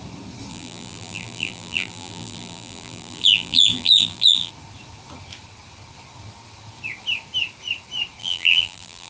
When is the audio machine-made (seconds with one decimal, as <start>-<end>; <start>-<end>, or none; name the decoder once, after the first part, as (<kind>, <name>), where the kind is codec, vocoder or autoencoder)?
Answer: 0.5-4.5 (vocoder, BigVGAN v2); 8.2-9.1